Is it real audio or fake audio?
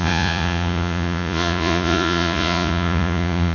fake